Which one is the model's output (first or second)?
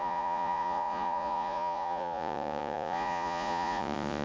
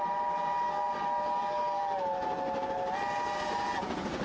first